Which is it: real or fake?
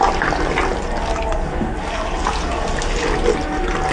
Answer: real